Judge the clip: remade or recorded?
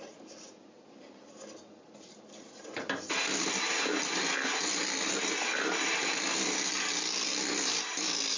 recorded